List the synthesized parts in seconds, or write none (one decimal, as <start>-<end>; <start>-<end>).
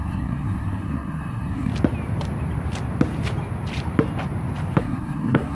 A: 0.0-1.7; 4.8-5.5